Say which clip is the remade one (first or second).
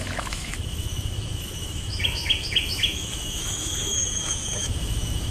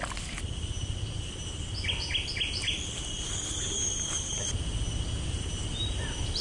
first